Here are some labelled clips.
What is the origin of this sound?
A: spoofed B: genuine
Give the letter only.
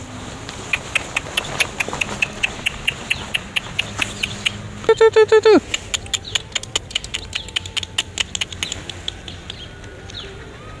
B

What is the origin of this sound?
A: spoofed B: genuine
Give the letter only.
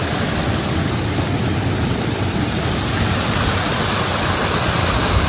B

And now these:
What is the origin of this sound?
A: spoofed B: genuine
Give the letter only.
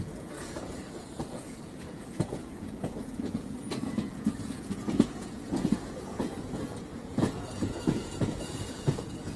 A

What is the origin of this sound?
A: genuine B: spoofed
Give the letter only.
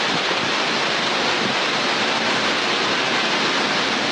A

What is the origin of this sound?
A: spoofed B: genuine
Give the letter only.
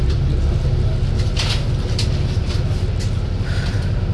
B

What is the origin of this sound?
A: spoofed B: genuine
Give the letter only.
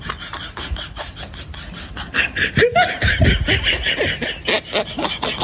B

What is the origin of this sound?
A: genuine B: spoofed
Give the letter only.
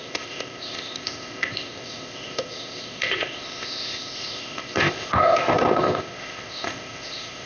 B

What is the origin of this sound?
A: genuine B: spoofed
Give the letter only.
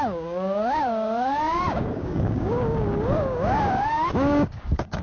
B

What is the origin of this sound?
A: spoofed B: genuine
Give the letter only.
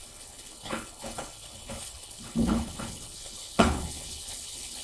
A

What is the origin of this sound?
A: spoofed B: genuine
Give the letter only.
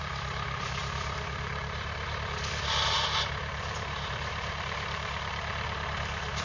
A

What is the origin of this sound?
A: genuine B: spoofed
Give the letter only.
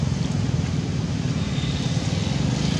A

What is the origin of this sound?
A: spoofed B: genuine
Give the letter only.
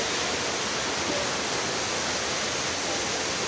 B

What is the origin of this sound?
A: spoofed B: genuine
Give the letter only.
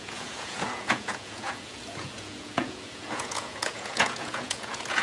A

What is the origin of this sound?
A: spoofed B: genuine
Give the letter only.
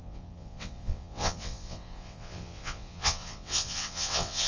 A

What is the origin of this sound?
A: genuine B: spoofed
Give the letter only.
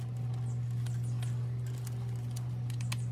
A